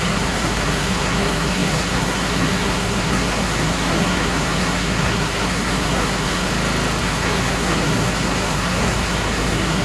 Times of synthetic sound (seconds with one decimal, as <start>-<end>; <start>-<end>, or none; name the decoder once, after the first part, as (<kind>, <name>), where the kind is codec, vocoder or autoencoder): 0.0-6.5 (codec, SNAC); 7.0-9.8